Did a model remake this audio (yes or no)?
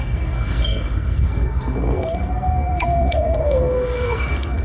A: yes